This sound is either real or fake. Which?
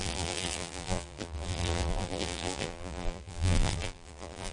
fake